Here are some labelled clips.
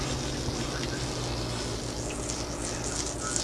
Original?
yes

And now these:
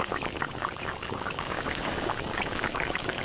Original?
no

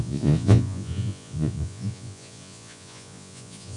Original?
no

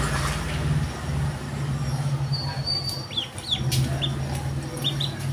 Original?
yes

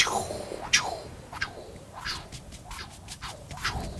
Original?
yes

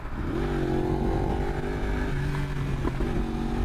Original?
yes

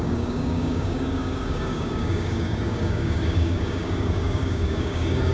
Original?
no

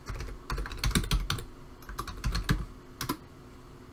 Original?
yes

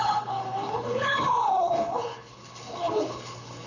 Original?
no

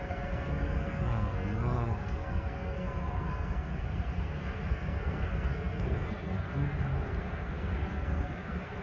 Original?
no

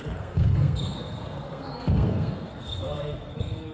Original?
no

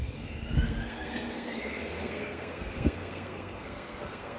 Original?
no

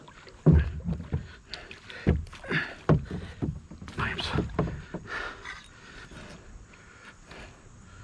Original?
yes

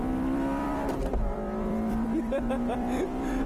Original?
no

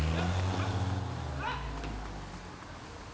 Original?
yes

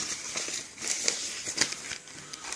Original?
yes